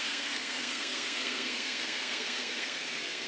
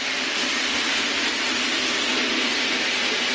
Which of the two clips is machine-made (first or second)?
first